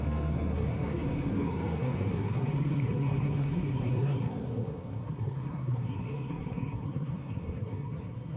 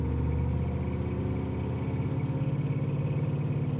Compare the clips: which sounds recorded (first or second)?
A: second